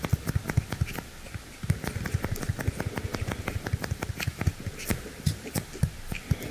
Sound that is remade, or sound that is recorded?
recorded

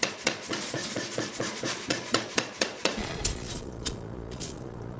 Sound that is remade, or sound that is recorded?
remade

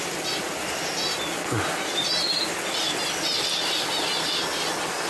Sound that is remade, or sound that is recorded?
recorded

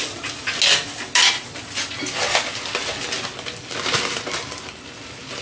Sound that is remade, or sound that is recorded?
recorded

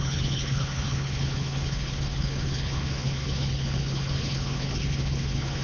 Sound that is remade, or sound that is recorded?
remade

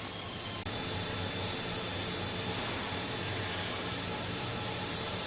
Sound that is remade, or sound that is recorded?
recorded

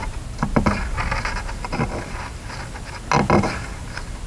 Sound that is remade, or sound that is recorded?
recorded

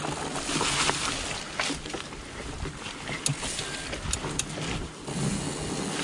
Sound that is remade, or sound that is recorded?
recorded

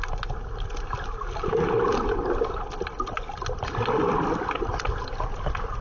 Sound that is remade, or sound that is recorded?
recorded